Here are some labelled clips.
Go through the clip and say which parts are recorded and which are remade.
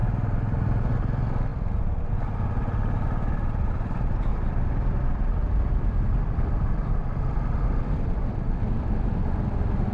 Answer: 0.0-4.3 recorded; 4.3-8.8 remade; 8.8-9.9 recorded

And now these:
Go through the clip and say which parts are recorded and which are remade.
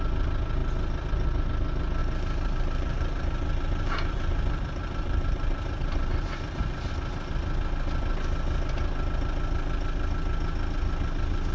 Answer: 0.0-2.0 recorded; 2.0-6.9 remade; 6.9-11.5 recorded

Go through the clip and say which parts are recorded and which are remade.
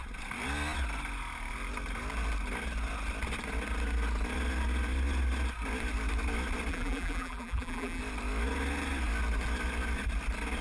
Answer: 0.0-6.7 recorded; 6.7-8.0 remade; 8.0-10.6 recorded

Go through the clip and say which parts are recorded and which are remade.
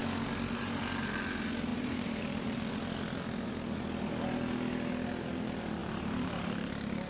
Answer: 0.0-1.7 recorded; 1.7-2.2 remade; 2.2-5.8 recorded; 5.8-7.1 remade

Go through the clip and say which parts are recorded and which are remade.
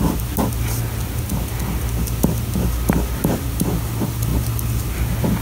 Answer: 0.0-5.4 recorded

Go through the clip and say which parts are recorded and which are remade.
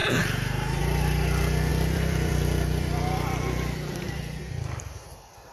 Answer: 0.0-1.7 recorded; 1.7-4.4 remade; 4.4-5.5 recorded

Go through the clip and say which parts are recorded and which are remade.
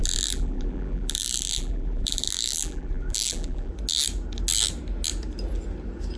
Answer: 0.0-3.7 remade; 3.7-6.2 recorded